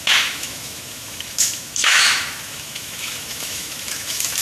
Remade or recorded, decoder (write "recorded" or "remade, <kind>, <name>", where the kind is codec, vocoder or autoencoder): remade, autoencoder, DAC-VAE